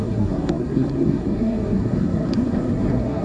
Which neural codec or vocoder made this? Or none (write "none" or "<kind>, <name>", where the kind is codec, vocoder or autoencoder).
codec, SNAC